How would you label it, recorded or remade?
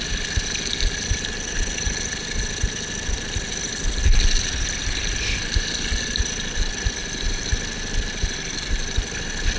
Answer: recorded